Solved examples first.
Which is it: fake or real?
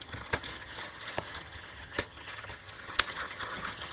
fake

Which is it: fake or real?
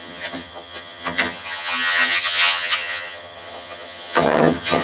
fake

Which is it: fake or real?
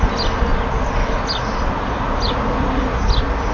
real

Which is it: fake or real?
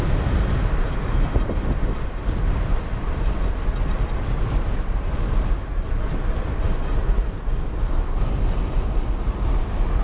real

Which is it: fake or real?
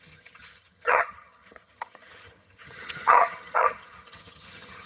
fake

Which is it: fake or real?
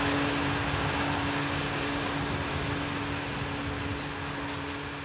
real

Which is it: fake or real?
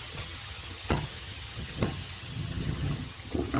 fake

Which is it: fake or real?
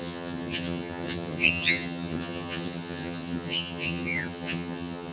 fake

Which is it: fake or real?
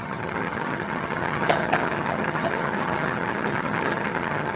fake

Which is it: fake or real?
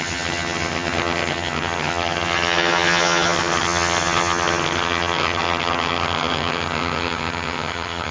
fake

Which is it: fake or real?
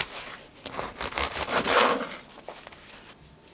real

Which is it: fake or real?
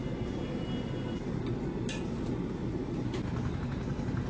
real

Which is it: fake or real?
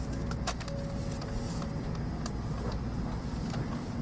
real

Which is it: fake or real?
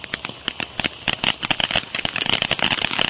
real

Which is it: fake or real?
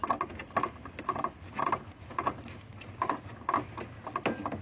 real